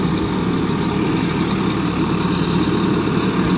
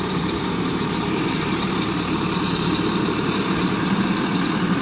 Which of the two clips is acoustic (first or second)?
first